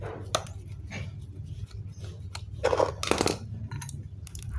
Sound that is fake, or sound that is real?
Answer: real